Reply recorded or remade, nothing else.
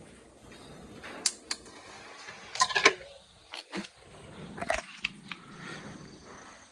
recorded